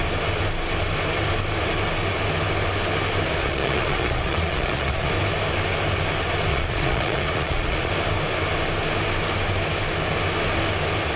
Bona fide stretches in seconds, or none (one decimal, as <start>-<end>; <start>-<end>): 0.0-3.4; 5.1-6.5; 7.9-11.2